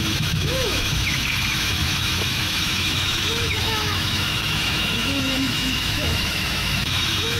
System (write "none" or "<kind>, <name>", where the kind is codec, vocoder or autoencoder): autoencoder, DAC-VAE